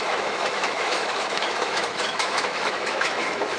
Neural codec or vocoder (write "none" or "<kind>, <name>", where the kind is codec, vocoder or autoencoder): autoencoder, DAC-VAE